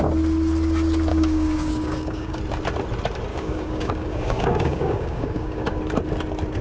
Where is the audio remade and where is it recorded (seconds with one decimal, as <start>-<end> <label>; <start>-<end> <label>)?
0.0-1.1 recorded; 1.1-2.4 remade; 2.4-3.3 recorded; 3.3-5.8 remade; 5.8-6.6 recorded